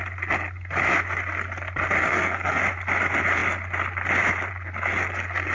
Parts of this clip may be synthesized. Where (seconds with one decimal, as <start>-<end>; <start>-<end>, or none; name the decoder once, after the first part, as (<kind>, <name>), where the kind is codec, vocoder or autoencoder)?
2.0-2.6 (codec, SNAC)